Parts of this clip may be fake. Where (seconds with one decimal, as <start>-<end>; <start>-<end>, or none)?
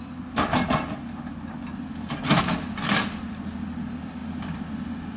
none